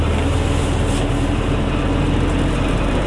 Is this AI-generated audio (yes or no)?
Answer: no